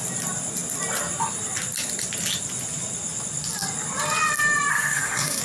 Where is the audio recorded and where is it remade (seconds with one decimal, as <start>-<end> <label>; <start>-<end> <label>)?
0.0-4.7 recorded; 4.7-5.4 remade